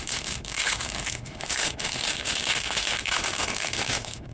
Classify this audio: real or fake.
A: fake